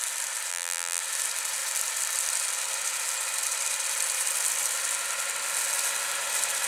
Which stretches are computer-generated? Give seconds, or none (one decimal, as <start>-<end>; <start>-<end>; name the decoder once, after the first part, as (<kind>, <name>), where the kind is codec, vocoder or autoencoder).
0.5-1.0 (vocoder, BigVGAN v2)